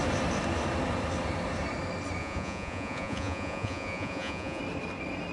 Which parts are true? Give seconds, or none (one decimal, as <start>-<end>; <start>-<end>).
0.0-2.2; 4.6-5.3